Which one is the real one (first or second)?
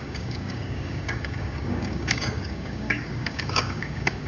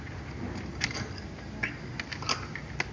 second